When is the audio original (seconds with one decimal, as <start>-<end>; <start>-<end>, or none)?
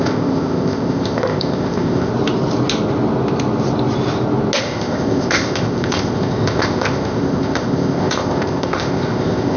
2.1-4.6